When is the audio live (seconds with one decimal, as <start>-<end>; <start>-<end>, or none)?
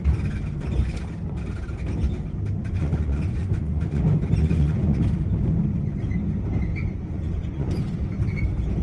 0.0-2.6; 4.0-4.4; 5.0-6.7; 7.8-8.8